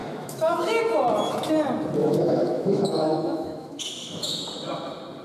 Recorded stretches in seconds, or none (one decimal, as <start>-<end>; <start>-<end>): 0.8-2.0; 4.4-5.2